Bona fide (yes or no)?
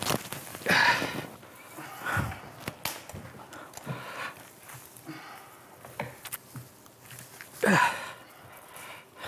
yes